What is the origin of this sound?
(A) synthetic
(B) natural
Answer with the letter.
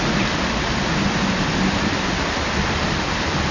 B